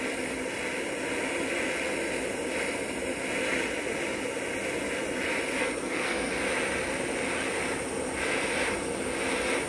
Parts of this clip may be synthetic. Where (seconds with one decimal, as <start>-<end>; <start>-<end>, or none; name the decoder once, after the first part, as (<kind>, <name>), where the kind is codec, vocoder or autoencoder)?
5.6-6.3 (codec, SNAC)